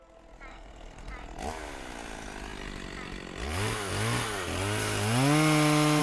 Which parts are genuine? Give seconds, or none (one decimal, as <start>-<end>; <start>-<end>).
0.0-0.5; 1.1-6.0